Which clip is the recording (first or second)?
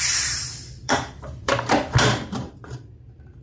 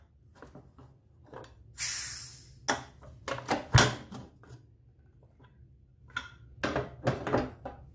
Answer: second